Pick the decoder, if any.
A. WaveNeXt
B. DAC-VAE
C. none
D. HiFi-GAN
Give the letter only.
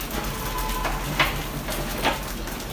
C